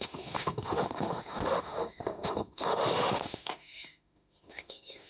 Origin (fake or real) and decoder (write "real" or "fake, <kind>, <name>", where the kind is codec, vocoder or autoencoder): fake, autoencoder, DAC-VAE